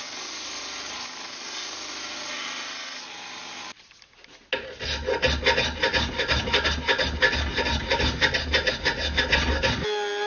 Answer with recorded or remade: recorded